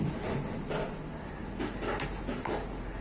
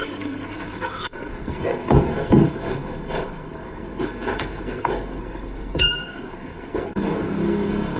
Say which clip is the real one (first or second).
first